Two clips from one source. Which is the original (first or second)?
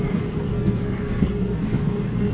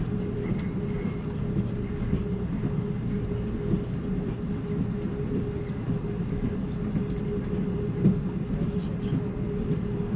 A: second